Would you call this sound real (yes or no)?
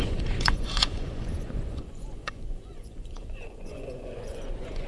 no